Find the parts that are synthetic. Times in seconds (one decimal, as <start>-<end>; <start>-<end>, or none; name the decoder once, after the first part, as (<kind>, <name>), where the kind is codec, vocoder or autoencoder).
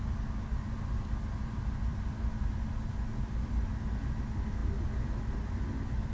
none